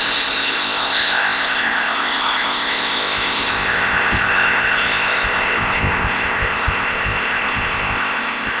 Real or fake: fake